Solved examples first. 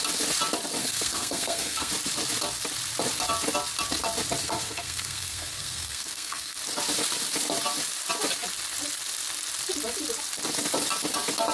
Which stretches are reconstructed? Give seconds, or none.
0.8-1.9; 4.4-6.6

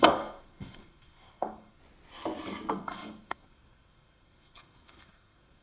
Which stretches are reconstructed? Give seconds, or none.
0.0-1.8; 2.7-5.6

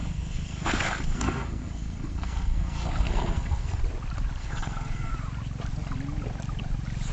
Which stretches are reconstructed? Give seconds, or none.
0.0-3.8; 4.4-5.1

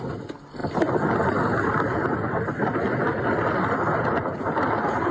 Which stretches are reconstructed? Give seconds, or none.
none